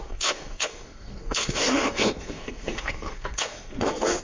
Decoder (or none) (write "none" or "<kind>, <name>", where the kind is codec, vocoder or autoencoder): codec, SNAC